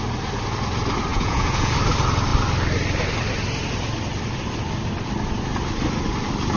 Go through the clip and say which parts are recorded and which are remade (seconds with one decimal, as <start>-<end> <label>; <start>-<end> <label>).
0.0-1.1 recorded; 1.1-1.7 remade; 1.7-6.6 recorded